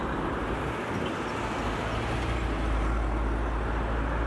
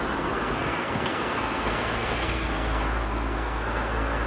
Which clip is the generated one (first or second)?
second